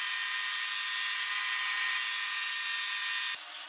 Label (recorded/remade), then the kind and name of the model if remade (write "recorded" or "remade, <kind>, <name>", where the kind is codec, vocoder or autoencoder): recorded